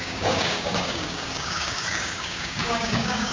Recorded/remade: remade